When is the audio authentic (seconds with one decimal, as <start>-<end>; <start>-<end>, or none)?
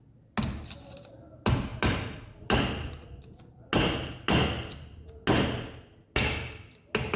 0.0-7.2